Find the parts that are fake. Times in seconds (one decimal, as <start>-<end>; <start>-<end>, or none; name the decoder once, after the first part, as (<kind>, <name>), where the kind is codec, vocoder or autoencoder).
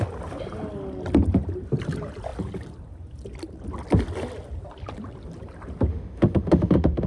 5.9-7.1 (autoencoder, DAC-VAE)